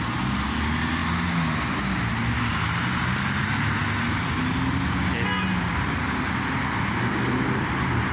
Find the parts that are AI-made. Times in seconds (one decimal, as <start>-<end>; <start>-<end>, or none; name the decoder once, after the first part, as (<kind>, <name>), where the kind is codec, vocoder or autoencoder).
none